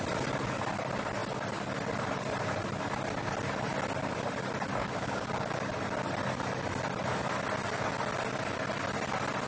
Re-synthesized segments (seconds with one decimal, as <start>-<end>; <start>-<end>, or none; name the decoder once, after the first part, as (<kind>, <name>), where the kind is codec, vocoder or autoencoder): 4.8-5.7 (codec, DAC)